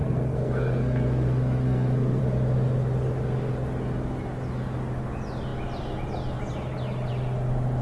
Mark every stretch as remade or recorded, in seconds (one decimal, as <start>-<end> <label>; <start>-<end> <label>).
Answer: 0.0-2.2 remade; 2.2-7.8 recorded